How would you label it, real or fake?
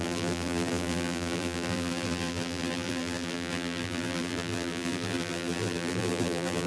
fake